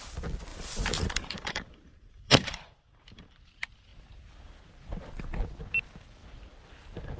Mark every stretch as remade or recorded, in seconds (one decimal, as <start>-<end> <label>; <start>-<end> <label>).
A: 0.0-0.5 recorded; 0.5-3.5 remade; 3.5-7.2 recorded

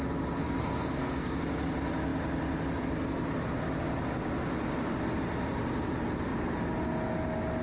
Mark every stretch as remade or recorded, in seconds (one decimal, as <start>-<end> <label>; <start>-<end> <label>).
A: 0.0-0.4 recorded; 0.4-1.4 remade; 1.4-7.6 recorded

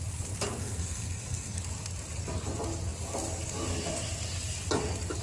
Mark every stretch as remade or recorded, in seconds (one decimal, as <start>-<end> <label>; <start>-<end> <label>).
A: 0.0-0.6 recorded; 0.6-1.6 remade; 1.6-5.2 recorded

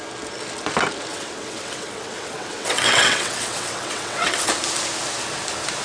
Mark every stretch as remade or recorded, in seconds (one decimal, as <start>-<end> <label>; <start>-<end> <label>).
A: 0.0-1.1 recorded; 1.1-4.5 remade; 4.5-5.8 recorded

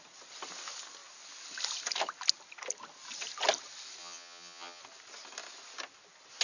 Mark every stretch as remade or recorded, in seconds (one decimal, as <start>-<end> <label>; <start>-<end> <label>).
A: 0.0-4.0 recorded; 4.0-4.8 remade; 4.8-6.4 recorded

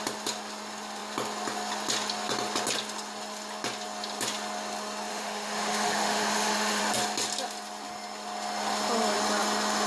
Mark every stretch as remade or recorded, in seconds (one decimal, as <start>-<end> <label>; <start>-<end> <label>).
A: 0.0-5.1 recorded; 5.1-6.8 remade; 6.8-9.9 recorded